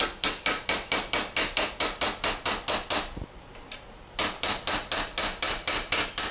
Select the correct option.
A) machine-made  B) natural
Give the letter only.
B